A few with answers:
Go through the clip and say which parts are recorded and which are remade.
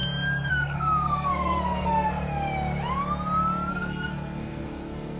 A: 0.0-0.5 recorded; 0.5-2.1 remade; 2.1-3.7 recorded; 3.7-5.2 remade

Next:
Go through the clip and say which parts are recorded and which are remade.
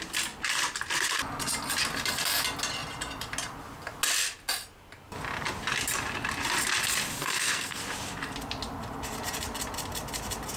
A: 0.0-7.2 recorded; 7.2-7.8 remade; 7.8-10.6 recorded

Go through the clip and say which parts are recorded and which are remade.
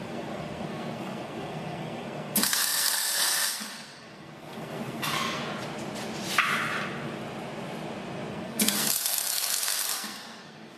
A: 0.0-5.4 remade; 5.4-8.3 recorded; 8.3-10.8 remade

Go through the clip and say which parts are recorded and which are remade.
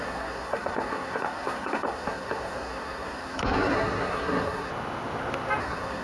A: 0.0-4.7 remade; 4.7-5.6 recorded; 5.6-6.0 remade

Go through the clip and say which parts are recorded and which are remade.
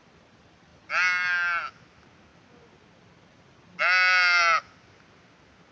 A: 0.0-5.7 recorded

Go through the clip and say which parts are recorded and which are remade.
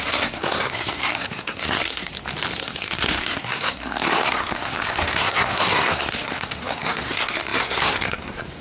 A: 0.0-2.1 remade; 2.1-2.6 recorded; 2.6-8.6 remade